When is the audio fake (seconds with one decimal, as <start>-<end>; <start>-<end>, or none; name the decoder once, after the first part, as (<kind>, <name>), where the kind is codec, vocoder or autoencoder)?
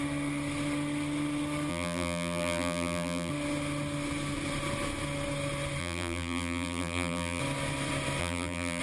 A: 1.7-3.3 (vocoder, BigVGAN v2); 5.8-7.4; 8.2-8.8